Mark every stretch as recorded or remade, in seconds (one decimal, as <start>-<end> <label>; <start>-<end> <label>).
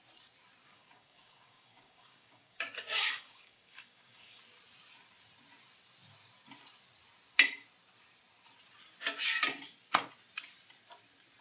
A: 0.0-0.6 recorded; 0.6-4.4 remade; 4.4-11.4 recorded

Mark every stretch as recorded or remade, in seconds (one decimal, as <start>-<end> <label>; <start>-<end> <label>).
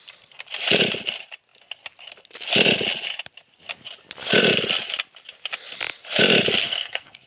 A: 0.0-6.6 recorded; 6.6-7.3 remade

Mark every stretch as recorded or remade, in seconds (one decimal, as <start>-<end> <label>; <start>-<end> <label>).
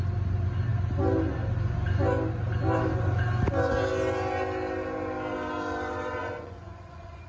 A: 0.0-6.2 recorded; 6.2-7.3 remade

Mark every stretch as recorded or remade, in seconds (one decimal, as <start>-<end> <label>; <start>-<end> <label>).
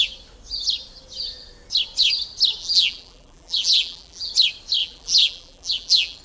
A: 0.0-2.6 recorded; 2.6-4.3 remade; 4.3-4.8 recorded; 4.8-6.2 remade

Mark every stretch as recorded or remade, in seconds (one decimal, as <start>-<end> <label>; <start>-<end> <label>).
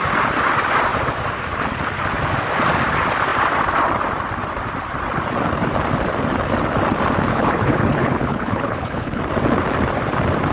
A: 0.0-7.3 recorded; 7.3-9.2 remade; 9.2-10.5 recorded